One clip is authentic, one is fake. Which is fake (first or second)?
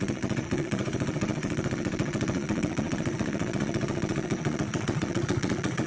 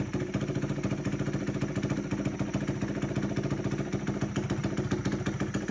first